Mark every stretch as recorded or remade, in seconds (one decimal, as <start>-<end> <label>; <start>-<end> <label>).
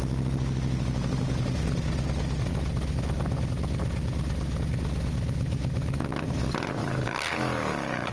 0.0-6.8 recorded; 6.8-8.1 remade